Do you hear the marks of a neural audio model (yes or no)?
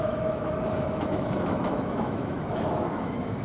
yes